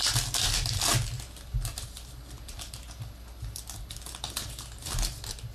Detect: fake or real real